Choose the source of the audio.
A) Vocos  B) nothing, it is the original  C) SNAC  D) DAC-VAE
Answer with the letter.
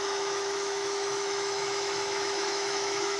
D